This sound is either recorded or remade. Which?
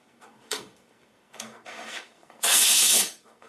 remade